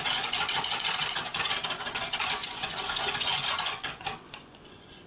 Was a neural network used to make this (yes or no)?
yes